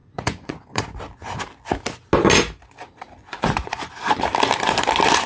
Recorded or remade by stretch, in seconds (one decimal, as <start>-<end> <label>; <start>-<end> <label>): 0.0-0.8 remade; 0.8-3.2 recorded; 3.2-3.9 remade; 3.9-5.3 recorded